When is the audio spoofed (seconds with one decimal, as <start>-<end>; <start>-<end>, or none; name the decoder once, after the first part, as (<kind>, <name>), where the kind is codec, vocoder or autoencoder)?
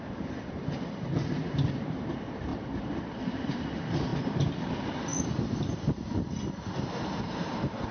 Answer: 0.0-2.5 (vocoder, BigVGAN v2); 3.2-4.1; 4.6-5.1; 7.3-7.9